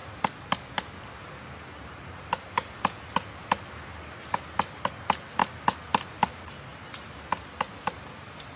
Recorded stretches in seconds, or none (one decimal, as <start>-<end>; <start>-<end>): 0.0-8.6